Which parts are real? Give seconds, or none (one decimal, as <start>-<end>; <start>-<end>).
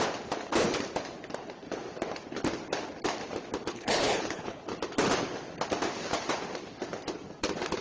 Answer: 0.0-3.7; 4.6-7.8